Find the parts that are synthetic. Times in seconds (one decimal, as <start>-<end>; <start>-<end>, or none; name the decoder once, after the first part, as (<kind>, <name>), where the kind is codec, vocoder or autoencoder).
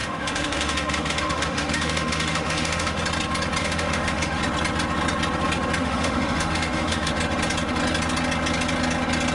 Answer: 0.0-3.0 (autoencoder, DAC-VAE); 3.6-4.4; 5.8-7.1